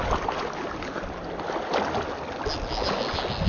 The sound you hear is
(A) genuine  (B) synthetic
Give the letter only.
A